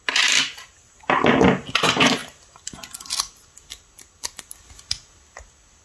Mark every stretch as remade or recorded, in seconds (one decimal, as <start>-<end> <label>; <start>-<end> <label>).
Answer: 0.0-5.8 recorded